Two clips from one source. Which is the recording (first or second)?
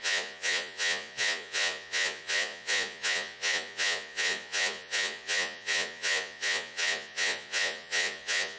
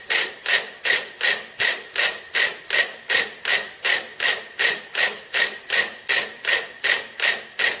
second